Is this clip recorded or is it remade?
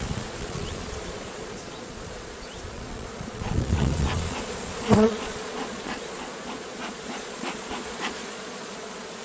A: remade